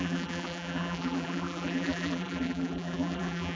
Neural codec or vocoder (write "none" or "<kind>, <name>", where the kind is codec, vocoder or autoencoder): vocoder, BigVGAN v2